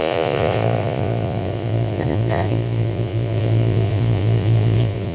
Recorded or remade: remade